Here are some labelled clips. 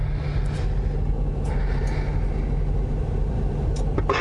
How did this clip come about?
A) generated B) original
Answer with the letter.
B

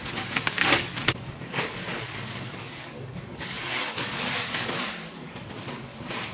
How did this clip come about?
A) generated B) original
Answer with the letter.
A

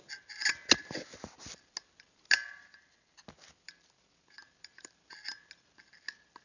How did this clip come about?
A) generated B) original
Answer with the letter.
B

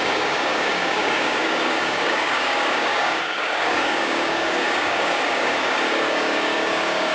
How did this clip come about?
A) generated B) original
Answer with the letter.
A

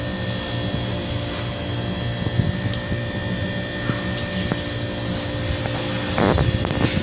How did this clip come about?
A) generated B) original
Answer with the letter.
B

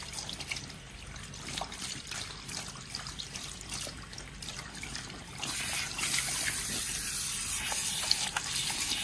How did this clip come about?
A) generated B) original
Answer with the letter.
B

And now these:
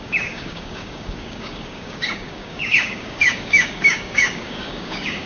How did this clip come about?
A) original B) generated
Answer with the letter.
B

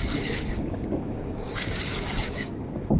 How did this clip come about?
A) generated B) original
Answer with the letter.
A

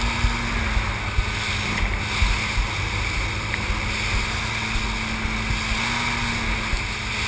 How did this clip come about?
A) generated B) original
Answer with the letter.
B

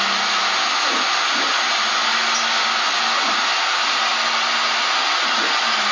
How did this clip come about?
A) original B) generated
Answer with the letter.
A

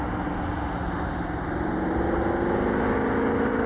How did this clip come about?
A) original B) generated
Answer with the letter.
A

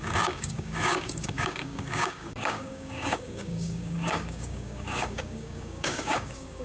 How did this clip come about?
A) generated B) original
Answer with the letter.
A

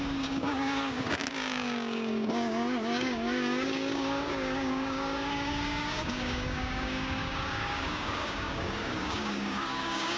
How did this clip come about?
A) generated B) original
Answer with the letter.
A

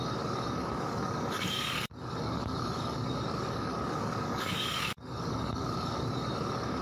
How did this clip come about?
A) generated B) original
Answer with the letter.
A